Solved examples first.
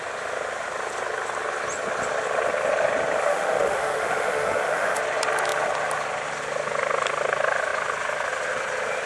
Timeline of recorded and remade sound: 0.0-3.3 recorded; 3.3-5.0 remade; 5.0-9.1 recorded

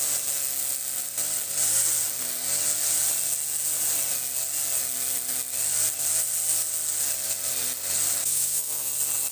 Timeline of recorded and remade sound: 0.0-8.2 recorded; 8.2-8.9 remade; 8.9-9.3 recorded